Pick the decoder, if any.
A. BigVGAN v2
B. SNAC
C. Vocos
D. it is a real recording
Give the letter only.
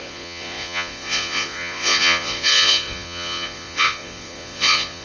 C